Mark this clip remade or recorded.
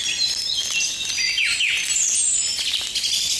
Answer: recorded